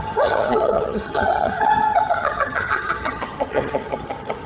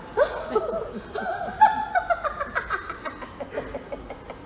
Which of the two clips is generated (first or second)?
first